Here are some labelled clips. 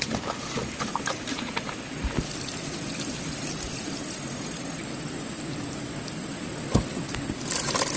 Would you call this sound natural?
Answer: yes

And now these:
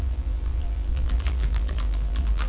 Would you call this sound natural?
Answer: no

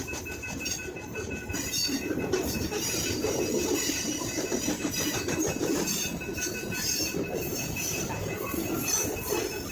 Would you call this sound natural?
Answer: no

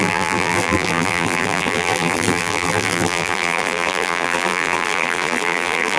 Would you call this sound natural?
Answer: no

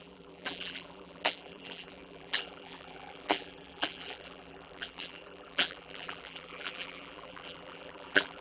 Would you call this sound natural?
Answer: no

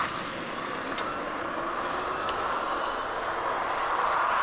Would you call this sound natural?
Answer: yes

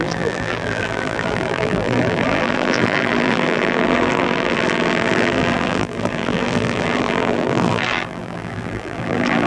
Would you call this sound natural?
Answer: no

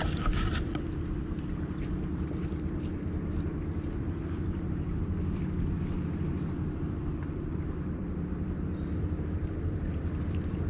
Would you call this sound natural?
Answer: no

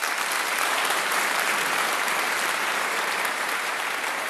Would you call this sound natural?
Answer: no